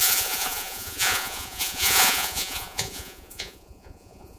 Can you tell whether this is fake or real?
fake